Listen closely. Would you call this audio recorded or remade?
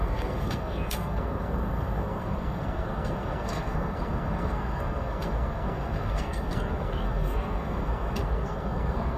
remade